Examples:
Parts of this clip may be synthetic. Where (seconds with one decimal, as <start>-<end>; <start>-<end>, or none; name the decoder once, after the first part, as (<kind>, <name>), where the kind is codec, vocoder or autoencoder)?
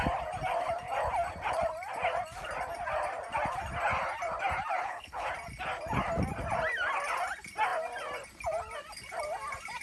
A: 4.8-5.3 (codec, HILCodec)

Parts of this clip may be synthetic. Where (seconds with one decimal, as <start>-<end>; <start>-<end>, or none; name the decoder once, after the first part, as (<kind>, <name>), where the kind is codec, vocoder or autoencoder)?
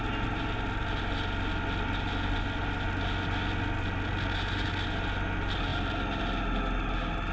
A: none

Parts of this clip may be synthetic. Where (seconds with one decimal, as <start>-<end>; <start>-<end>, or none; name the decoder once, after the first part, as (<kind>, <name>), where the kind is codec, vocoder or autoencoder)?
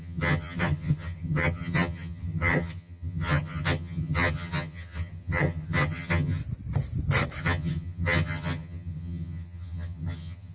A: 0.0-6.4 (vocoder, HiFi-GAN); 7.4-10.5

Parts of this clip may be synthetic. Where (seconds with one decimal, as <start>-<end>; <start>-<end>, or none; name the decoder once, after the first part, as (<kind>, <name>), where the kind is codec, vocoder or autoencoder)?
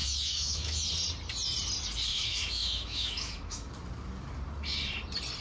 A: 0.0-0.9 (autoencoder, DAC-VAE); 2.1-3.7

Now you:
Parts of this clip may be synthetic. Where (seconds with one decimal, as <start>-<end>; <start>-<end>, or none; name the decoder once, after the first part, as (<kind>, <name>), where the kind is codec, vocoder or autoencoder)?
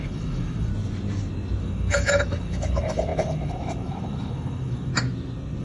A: 0.0-0.7 (autoencoder, DAC-VAE); 1.6-4.9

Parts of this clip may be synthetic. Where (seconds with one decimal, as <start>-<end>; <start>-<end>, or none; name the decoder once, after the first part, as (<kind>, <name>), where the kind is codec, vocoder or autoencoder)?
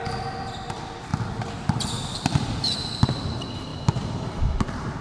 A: 1.1-3.0 (vocoder, BigVGAN v2); 3.7-4.6